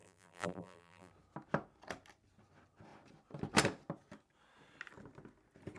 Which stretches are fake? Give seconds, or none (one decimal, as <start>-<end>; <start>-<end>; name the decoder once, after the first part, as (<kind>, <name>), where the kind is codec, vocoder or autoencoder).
0.0-1.1 (vocoder, BigVGAN v2)